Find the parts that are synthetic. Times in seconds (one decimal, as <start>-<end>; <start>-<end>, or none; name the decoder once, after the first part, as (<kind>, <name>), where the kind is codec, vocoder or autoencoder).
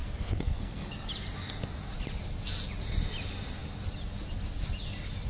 0.0-1.1 (codec, SNAC)